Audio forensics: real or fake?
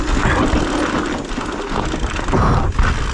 real